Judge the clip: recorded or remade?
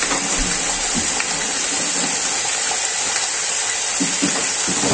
recorded